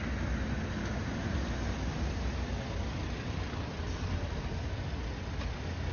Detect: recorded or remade recorded